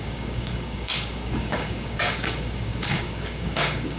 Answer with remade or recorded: remade